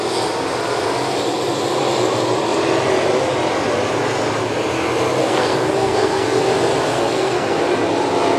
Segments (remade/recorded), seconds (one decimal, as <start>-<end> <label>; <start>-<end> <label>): 0.0-5.2 recorded; 5.2-6.4 remade; 6.4-6.9 recorded; 6.9-7.6 remade; 7.6-8.4 recorded